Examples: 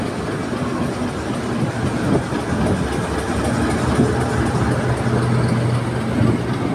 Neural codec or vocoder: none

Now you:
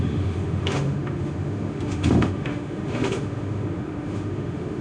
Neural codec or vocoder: autoencoder, DAC-VAE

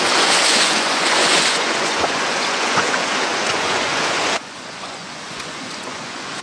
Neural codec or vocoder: vocoder, Vocos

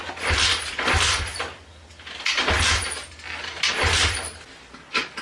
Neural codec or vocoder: none